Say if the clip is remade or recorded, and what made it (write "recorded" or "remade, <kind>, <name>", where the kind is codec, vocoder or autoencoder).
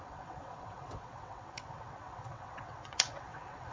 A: remade, vocoder, WaveNeXt